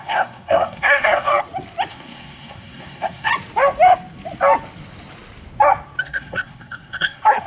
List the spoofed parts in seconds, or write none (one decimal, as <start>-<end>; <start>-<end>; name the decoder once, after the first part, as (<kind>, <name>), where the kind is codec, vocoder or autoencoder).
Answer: 0.0-1.3 (codec, SNAC); 1.9-3.3; 6.0-7.5